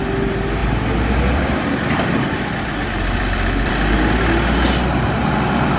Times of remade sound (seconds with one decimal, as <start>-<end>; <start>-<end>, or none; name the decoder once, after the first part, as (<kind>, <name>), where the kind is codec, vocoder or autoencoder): 0.6-3.7 (vocoder, BigVGAN v2)